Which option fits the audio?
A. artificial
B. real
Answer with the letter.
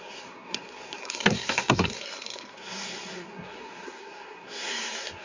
A